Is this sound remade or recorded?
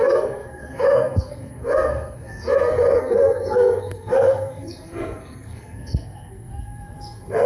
remade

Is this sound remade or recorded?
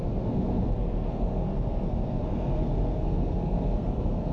remade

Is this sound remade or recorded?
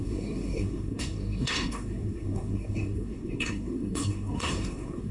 remade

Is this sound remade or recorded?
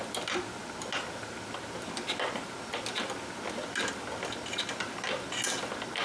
recorded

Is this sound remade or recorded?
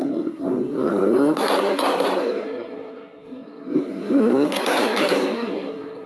remade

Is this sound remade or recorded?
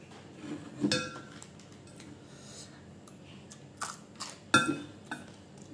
recorded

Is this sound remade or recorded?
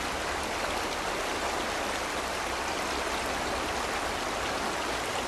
recorded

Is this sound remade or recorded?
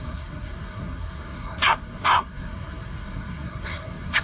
remade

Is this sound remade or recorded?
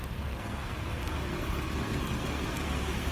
remade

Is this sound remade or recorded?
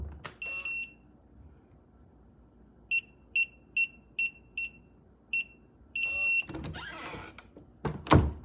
recorded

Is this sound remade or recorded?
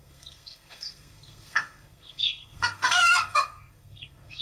remade